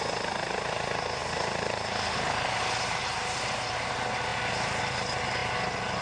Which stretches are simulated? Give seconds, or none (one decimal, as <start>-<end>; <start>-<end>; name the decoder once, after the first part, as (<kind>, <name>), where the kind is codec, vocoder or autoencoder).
none